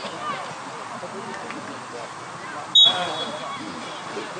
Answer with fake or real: real